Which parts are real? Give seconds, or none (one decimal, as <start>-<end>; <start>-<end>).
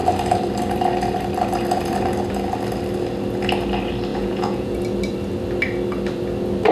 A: 0.0-4.1; 4.8-6.7